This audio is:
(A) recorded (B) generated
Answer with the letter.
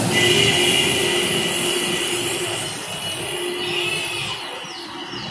A